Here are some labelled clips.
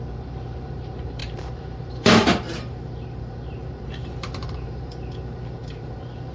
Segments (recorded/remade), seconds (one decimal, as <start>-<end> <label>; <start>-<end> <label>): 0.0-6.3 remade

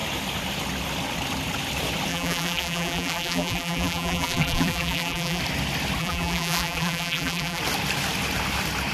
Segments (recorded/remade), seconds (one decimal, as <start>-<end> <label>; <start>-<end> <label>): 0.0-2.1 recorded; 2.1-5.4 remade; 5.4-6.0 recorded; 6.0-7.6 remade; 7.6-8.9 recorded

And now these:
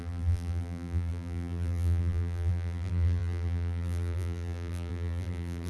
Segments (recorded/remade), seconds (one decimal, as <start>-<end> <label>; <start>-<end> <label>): 0.0-5.7 remade